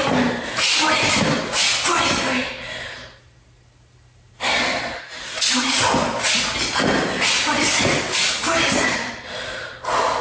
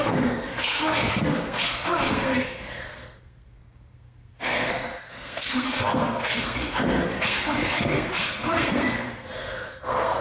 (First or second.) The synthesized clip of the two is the second